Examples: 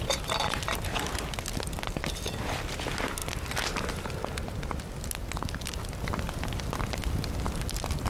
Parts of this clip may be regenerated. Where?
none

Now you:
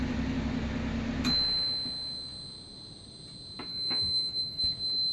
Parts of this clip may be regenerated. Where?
3.7-4.6 (autoencoder, DAC-VAE)

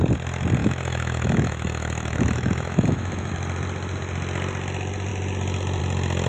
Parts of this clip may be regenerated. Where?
0.6-3.3 (autoencoder, DAC-VAE)

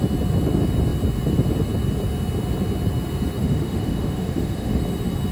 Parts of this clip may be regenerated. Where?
3.4-4.8 (autoencoder, DAC-VAE)

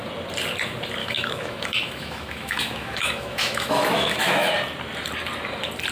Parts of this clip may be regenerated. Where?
1.0-4.5 (autoencoder, DAC-VAE)

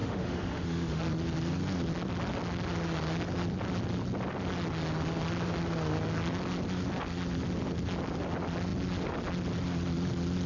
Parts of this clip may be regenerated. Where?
0.0-1.0 (autoencoder, DAC-VAE)

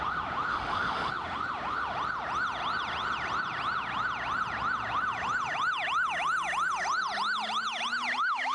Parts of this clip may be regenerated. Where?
0.5-1.1 (autoencoder, DAC-VAE)

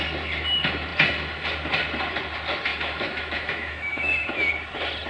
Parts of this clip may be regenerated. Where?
2.7-4.5 (autoencoder, DAC-VAE)